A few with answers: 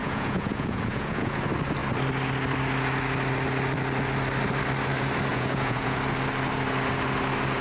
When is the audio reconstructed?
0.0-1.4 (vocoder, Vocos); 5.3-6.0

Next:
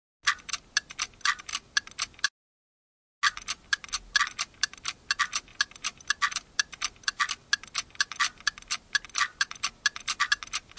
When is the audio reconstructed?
none

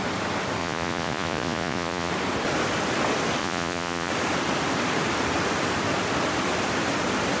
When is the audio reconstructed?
0.6-2.1 (vocoder, Vocos); 3.4-4.1

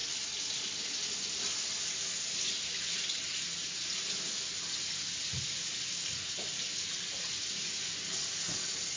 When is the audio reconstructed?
none

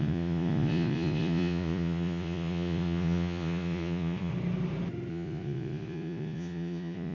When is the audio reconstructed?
0.0-4.3 (vocoder, Vocos); 5.1-7.1

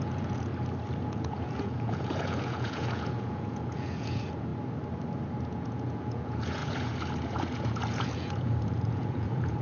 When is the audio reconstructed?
0.0-0.5 (vocoder, Vocos); 1.0-4.5; 5.4-9.6